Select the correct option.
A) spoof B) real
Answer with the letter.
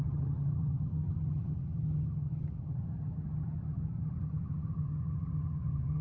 A